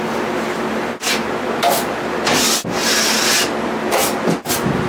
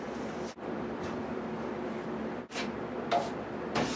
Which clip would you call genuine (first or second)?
first